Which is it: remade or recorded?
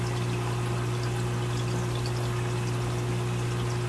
recorded